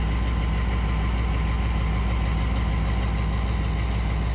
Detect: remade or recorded recorded